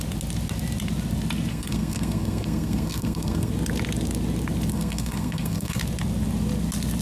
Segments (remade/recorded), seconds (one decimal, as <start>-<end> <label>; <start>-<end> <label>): 0.0-1.5 recorded; 1.5-3.5 remade; 3.5-4.7 recorded; 4.7-5.8 remade; 5.8-7.0 recorded